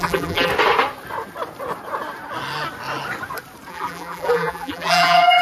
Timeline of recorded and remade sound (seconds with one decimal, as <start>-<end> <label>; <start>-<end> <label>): 0.0-0.5 remade; 0.5-3.7 recorded; 3.7-5.4 remade